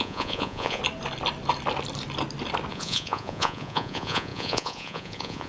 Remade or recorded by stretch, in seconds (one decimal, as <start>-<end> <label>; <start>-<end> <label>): 0.0-0.8 remade; 0.8-2.7 recorded; 2.7-5.5 remade